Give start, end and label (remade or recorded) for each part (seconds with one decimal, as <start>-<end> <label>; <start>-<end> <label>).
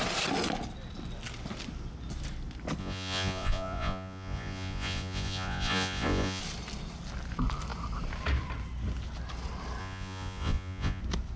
0.0-2.8 recorded; 2.8-6.4 remade; 6.4-9.8 recorded; 9.8-11.0 remade; 11.0-11.4 recorded